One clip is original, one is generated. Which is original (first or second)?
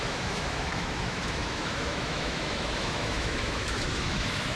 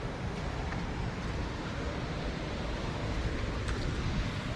second